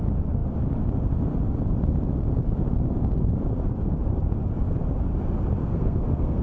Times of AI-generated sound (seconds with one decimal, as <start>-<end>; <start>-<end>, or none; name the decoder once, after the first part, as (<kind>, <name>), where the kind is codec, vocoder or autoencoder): 5.6-6.4 (codec, SNAC)